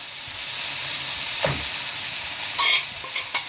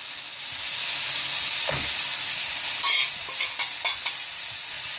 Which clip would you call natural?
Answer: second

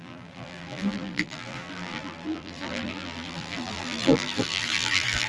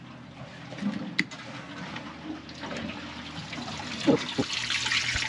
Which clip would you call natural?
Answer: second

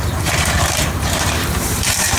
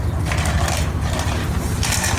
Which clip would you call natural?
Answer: second